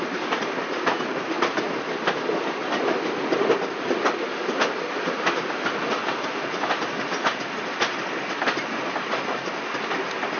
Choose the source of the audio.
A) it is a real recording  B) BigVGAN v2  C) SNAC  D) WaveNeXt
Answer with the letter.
A